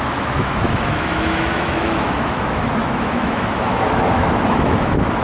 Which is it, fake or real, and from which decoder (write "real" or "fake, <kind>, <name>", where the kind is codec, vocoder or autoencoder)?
fake, autoencoder, DAC-VAE